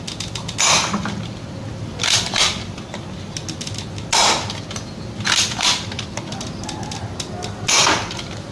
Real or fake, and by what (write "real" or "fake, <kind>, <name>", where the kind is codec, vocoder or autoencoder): real